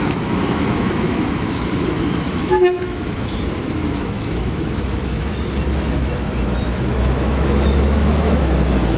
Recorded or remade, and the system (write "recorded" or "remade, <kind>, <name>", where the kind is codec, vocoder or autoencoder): remade, autoencoder, DAC-VAE